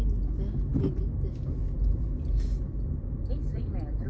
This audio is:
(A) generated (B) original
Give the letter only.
B